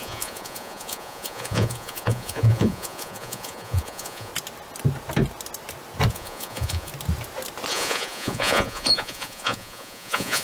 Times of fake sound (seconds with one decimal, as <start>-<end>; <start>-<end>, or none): 0.0-4.3; 6.1-6.9; 7.7-10.4